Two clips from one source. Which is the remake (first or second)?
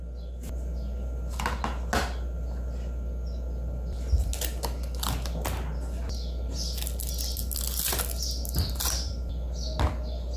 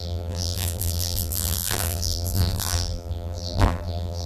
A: second